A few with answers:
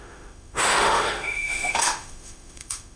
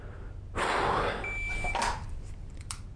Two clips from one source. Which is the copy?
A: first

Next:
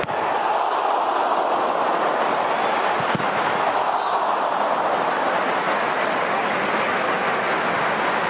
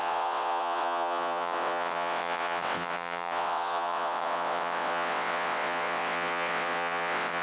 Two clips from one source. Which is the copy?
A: second